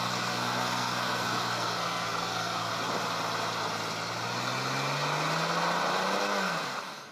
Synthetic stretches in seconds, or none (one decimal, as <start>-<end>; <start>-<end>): 0.0-2.7; 6.2-7.1